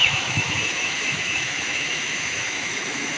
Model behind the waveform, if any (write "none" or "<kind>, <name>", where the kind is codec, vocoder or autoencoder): autoencoder, DAC-VAE